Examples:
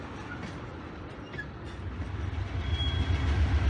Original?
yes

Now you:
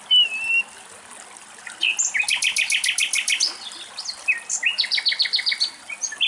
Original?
yes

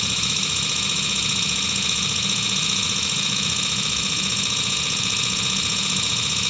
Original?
no